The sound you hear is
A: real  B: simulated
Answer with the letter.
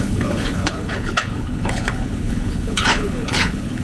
B